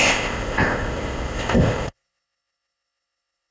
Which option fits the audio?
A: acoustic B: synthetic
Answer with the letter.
B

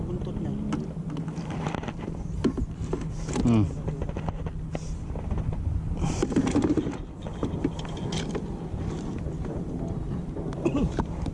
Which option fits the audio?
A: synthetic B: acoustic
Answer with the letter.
B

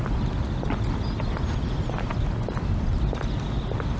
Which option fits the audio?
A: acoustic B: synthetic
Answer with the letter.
A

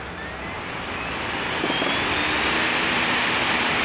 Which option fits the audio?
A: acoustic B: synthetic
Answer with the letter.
A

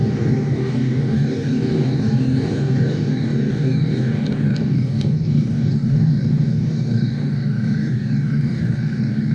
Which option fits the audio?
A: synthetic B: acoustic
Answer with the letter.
A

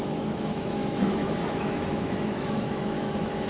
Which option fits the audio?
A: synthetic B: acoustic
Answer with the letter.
A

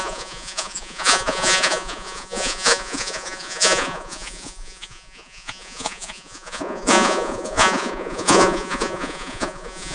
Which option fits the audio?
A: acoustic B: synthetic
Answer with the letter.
B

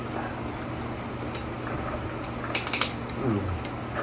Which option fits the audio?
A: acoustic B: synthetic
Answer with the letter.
A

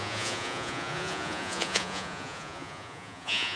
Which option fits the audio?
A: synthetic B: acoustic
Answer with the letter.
A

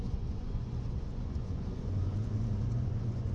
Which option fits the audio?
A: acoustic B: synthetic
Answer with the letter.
B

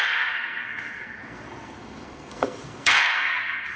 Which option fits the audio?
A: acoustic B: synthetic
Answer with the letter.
B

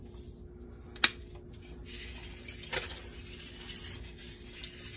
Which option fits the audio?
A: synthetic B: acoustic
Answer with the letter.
B